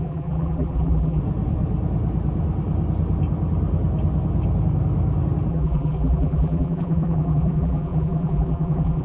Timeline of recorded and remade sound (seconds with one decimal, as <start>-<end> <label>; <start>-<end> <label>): 0.0-1.2 remade; 1.2-5.5 recorded; 5.5-9.0 remade